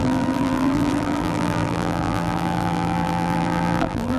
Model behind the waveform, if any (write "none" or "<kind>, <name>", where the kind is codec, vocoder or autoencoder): vocoder, BigVGAN v2